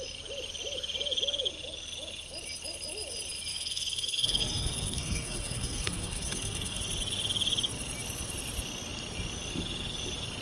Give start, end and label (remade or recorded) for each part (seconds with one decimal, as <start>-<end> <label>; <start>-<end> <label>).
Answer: 0.0-3.5 recorded; 3.5-6.8 remade; 6.8-10.4 recorded